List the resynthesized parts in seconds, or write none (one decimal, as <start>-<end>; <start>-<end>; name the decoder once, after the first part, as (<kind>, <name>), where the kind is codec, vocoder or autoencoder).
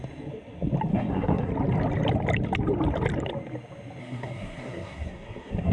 0.9-1.5 (codec, SNAC); 4.0-5.7